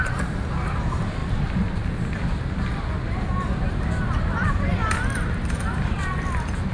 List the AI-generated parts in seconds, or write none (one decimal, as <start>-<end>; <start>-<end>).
none